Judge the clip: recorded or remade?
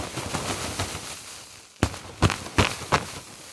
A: recorded